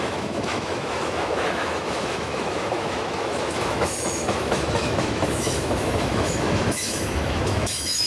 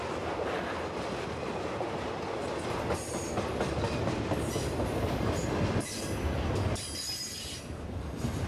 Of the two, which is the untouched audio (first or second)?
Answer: second